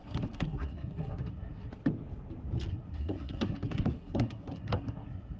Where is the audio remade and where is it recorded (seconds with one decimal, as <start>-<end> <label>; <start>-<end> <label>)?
0.0-1.7 remade; 1.7-2.7 recorded; 2.7-5.4 remade